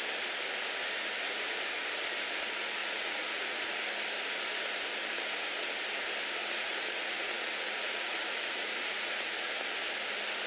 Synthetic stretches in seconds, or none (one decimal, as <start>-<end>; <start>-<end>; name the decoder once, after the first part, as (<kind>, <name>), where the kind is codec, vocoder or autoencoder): 2.8-3.9 (vocoder, Vocos); 6.4-9.5